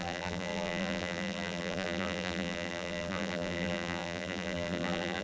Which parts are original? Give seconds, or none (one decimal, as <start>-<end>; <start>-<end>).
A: none